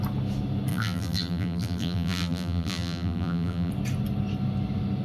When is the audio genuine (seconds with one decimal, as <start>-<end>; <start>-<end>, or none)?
0.0-0.7; 3.7-5.0